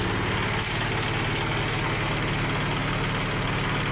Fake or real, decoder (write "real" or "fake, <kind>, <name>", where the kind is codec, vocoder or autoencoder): real